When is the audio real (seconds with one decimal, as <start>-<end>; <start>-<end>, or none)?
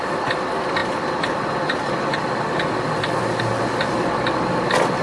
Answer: 0.0-5.0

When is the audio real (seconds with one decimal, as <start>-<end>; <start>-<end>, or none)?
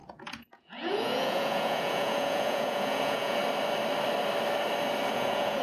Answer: 3.4-5.1